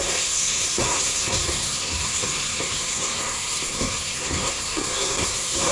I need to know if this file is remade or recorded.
remade